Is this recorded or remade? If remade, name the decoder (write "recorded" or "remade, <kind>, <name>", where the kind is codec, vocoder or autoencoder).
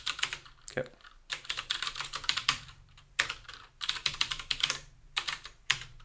remade, vocoder, BigVGAN v2